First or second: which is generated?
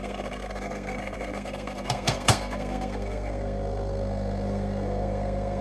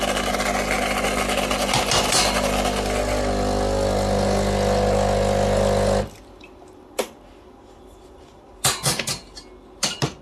first